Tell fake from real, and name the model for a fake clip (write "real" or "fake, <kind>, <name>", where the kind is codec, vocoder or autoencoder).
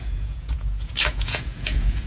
fake, vocoder, Vocos